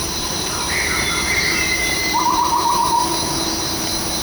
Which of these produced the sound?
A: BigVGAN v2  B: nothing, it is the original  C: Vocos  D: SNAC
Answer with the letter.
A